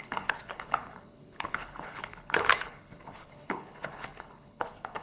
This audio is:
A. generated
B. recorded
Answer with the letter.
A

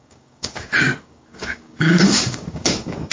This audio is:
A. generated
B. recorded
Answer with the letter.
A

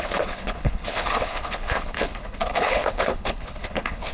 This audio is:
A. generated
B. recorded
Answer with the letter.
A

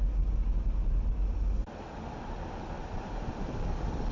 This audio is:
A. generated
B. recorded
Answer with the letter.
B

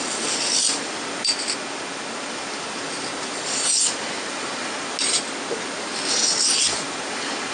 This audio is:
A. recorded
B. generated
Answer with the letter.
A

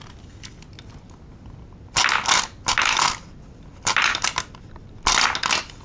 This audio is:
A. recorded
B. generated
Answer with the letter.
A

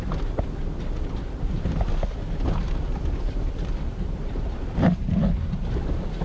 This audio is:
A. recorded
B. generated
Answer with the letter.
A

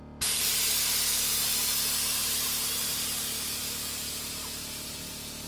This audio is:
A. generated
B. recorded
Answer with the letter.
B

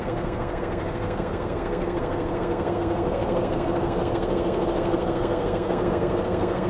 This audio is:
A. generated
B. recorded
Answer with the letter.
A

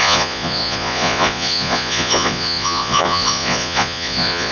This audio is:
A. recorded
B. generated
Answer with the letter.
B